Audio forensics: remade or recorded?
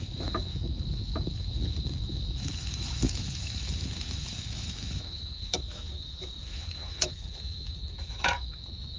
remade